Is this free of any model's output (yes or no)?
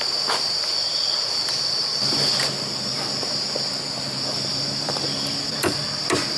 no